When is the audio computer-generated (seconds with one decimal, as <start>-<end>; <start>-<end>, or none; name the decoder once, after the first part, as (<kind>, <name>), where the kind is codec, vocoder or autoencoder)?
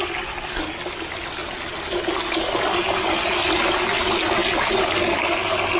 none